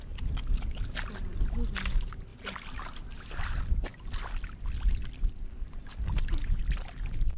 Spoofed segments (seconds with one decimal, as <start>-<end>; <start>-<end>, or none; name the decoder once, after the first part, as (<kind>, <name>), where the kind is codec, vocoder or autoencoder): none